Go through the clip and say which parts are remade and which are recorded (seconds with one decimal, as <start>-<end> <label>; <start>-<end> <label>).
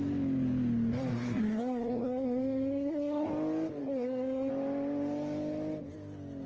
0.0-1.1 recorded; 1.1-3.3 remade; 3.3-3.8 recorded; 3.8-4.5 remade; 4.5-6.5 recorded